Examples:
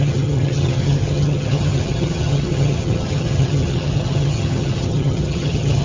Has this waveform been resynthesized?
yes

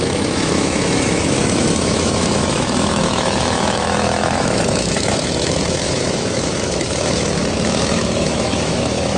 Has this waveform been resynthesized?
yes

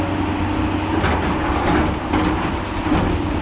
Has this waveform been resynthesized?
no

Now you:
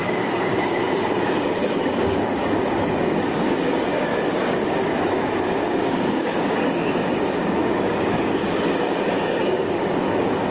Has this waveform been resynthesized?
yes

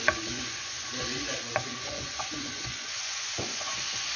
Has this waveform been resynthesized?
yes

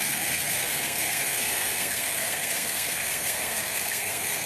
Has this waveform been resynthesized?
yes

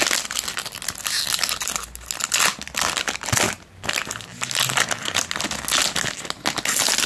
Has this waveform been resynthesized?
no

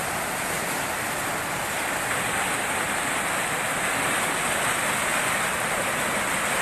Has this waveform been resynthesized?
no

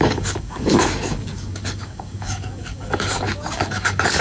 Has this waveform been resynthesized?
yes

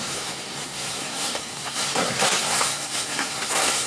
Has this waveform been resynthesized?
yes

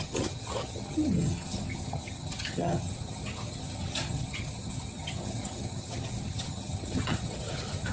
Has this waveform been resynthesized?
yes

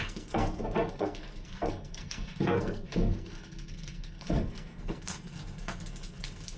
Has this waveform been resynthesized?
yes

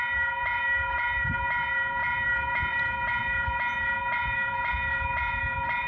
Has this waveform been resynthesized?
yes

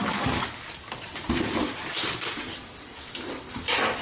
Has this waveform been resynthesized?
yes